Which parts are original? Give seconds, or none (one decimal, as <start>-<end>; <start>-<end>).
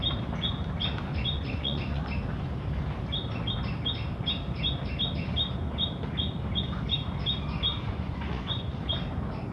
0.0-1.1; 2.0-7.7; 8.8-9.5